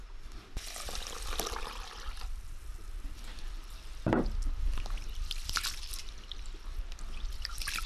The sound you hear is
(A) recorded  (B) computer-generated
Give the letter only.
A